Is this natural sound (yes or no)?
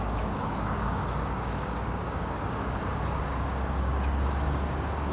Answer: no